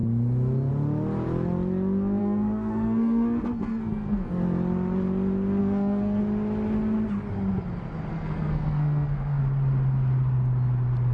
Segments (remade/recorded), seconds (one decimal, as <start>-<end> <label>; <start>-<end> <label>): 0.0-2.2 recorded; 2.2-4.3 remade; 4.3-5.6 recorded; 5.6-6.2 remade; 6.2-8.1 recorded; 8.1-9.4 remade; 9.4-11.1 recorded